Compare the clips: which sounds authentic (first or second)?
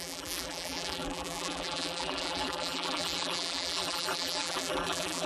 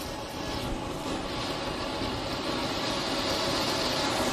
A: second